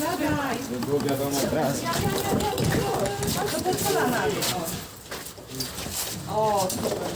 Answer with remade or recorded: recorded